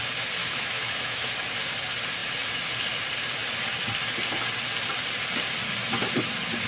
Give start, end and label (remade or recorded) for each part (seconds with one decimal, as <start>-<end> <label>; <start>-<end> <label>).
0.0-0.4 recorded; 0.4-1.3 remade; 1.3-6.7 recorded